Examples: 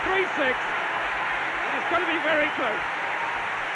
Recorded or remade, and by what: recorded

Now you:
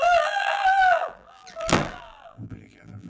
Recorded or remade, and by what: remade, vocoder, BigVGAN v2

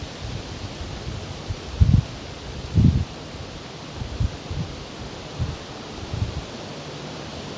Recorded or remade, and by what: remade, vocoder, BigVGAN v2